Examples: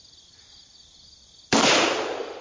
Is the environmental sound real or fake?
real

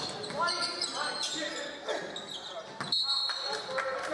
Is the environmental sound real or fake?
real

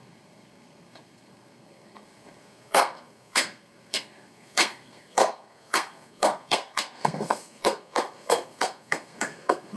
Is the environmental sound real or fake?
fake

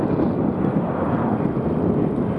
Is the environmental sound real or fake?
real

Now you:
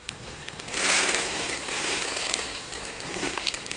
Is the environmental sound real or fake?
fake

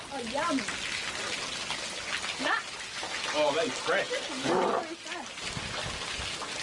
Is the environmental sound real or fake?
real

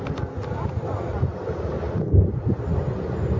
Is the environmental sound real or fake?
real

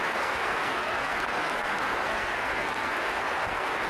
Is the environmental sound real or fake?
fake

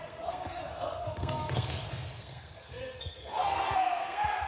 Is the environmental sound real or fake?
fake